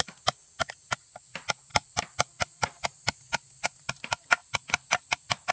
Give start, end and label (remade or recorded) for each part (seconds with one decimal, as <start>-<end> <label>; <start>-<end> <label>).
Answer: 0.0-5.5 recorded